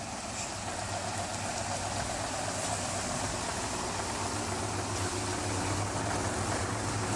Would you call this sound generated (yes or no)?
no